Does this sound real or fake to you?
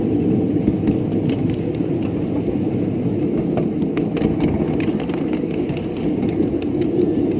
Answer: real